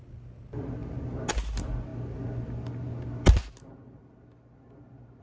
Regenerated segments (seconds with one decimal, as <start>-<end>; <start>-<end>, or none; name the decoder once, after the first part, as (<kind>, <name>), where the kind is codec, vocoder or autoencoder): none